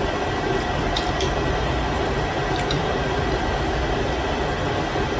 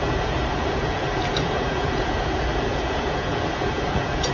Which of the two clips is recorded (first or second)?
first